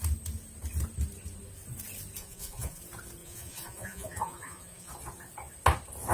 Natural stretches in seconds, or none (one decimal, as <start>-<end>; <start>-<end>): 0.0-2.2; 2.8-3.2; 4.9-6.1

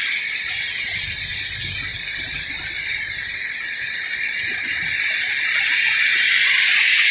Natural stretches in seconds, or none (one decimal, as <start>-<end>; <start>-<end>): 0.0-7.1

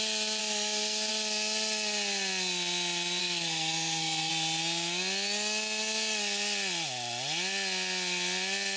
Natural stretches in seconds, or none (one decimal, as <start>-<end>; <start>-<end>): 0.0-0.4; 1.1-3.2; 4.3-8.8

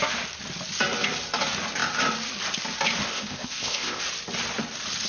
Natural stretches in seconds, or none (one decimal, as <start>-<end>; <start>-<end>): 0.0-3.1; 4.0-5.1

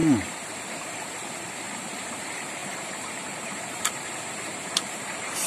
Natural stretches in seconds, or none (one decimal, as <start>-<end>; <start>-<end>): none

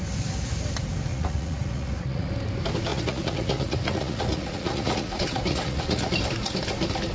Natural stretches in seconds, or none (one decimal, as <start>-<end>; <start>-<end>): 0.0-1.1; 2.3-2.9; 6.1-7.1

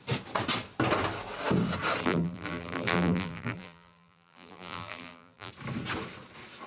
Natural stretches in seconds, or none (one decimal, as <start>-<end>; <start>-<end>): 0.0-2.0; 5.5-6.7